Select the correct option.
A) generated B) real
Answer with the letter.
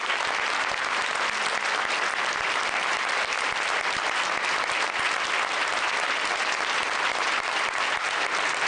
B